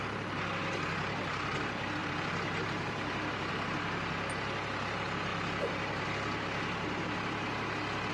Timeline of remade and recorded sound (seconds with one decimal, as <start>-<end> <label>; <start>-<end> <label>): 0.0-2.0 recorded; 2.0-3.5 remade; 3.5-8.1 recorded